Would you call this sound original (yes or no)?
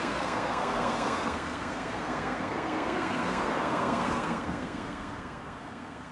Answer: no